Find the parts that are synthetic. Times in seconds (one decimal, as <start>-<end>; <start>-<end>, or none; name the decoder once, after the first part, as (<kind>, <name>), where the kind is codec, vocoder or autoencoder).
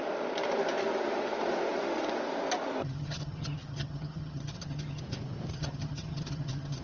2.8-5.0 (vocoder, HiFi-GAN); 5.5-6.8